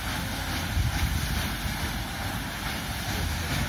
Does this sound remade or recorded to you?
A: recorded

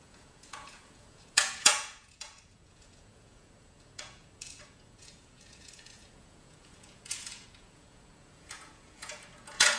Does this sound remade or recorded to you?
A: remade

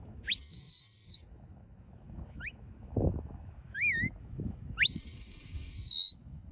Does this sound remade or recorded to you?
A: remade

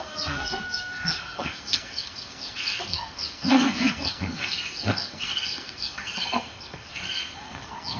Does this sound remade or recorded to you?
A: remade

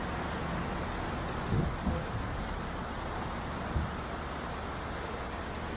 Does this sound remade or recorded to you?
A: recorded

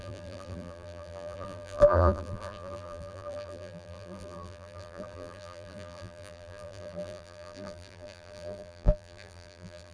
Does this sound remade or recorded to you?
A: remade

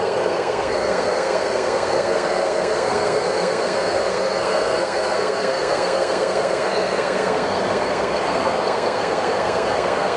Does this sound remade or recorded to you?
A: remade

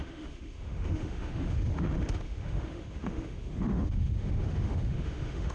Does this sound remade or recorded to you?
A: remade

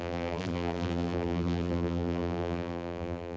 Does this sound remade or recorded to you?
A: remade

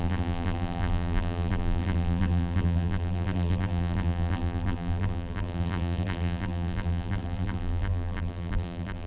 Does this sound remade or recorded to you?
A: remade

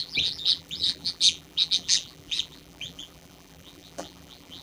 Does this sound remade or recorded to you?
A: remade